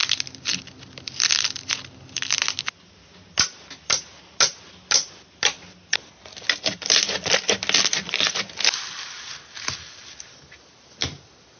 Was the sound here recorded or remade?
recorded